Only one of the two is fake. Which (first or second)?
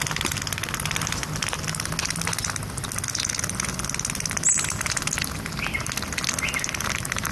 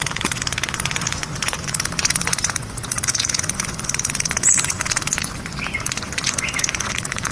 second